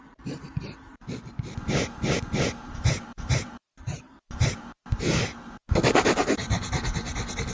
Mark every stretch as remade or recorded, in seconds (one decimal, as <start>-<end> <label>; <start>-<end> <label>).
0.0-7.5 remade